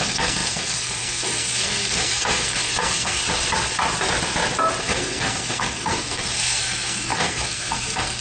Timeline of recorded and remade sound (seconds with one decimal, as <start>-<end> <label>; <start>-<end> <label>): 0.0-3.2 remade; 3.2-4.8 recorded; 4.8-8.2 remade